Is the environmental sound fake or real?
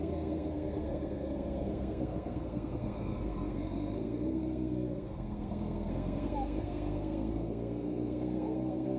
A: fake